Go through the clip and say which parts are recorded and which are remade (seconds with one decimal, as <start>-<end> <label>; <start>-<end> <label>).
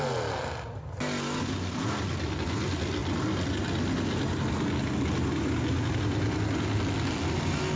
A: 0.0-7.8 recorded